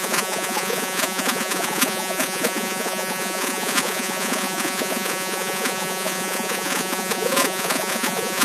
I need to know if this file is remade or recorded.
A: remade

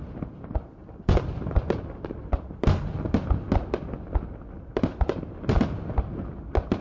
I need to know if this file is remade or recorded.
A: recorded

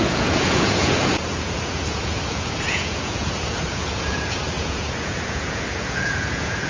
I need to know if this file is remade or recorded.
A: remade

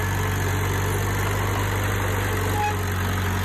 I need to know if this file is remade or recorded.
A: recorded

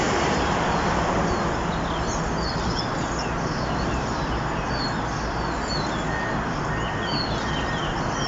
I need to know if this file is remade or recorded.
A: recorded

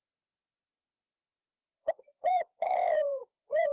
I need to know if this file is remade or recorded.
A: remade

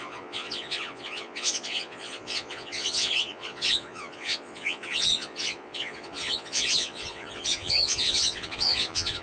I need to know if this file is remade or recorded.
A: remade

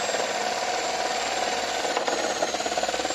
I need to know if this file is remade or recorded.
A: recorded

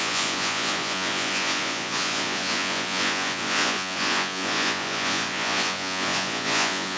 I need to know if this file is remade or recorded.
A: remade